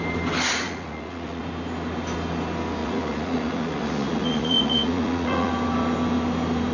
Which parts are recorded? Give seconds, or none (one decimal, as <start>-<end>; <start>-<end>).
0.0-0.5; 1.4-2.8; 5.5-6.7